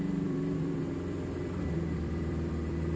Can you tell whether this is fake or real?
fake